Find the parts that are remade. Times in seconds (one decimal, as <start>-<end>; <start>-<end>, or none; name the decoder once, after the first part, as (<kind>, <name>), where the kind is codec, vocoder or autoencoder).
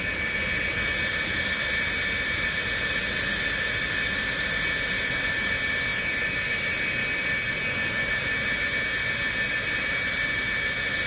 none